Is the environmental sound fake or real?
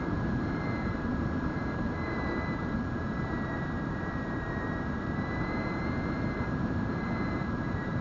fake